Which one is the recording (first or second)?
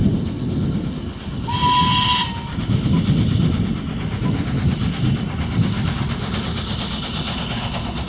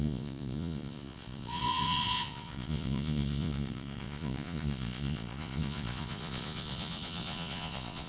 first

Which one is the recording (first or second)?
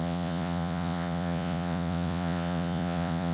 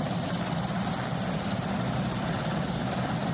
second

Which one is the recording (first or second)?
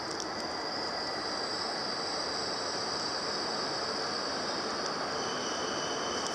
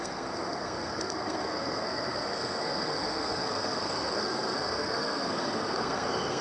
first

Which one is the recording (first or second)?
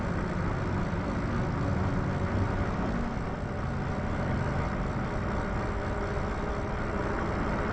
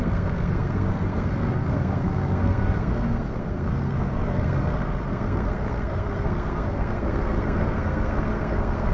first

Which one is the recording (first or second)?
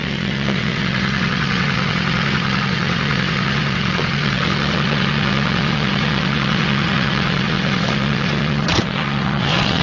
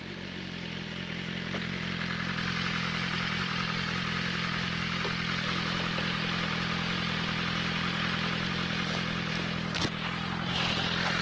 second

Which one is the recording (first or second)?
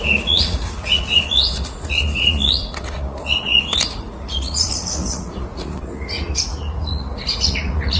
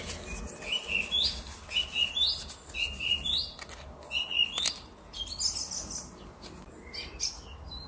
second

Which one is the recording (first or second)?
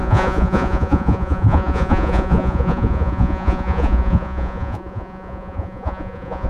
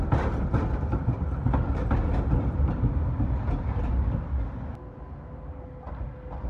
second